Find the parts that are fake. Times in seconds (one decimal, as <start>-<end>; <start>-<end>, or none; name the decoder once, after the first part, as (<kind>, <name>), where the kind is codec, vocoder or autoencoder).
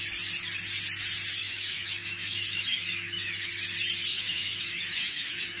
1.4-3.5 (autoencoder, DAC-VAE); 4.1-5.6